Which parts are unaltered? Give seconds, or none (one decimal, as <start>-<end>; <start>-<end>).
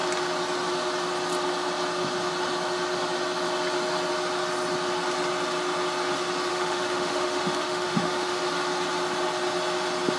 0.0-6.5; 8.4-10.2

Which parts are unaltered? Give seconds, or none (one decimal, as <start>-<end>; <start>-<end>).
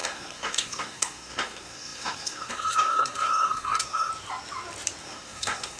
4.1-5.0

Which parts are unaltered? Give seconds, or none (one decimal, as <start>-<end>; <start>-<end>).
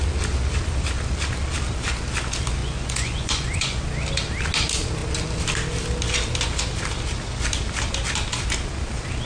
0.0-2.6; 3.8-9.3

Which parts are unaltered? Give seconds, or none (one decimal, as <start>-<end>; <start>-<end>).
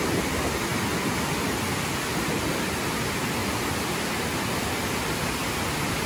0.0-6.1